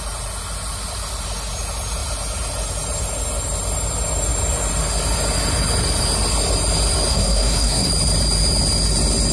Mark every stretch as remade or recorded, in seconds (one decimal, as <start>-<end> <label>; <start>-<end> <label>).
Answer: 0.0-7.1 recorded; 7.1-7.9 remade; 7.9-9.3 recorded